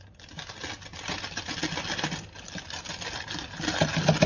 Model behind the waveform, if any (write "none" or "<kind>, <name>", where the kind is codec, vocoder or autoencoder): none